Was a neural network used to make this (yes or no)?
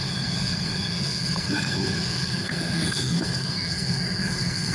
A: yes